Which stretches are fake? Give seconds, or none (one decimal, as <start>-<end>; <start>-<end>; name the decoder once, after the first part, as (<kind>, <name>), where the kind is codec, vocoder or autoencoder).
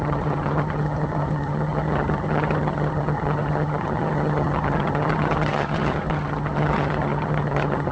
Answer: 0.0-7.9 (vocoder, HiFi-GAN)